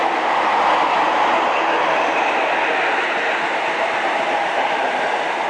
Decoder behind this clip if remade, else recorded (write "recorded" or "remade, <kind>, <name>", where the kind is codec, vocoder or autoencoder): recorded